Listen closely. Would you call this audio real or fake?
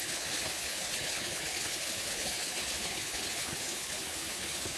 fake